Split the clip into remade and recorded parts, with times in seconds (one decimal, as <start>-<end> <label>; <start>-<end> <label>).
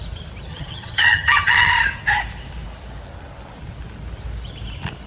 0.0-0.5 recorded; 0.5-1.7 remade; 1.7-5.1 recorded